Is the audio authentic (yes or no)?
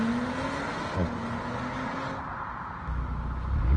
yes